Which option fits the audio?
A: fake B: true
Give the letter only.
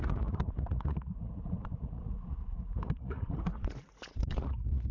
A